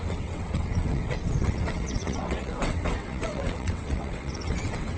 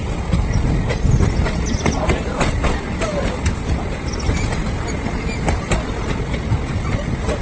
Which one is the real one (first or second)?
second